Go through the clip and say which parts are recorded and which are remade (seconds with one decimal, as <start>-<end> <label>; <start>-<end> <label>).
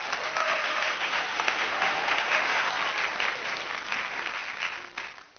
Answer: 0.0-0.4 recorded; 0.4-2.7 remade; 2.7-5.4 recorded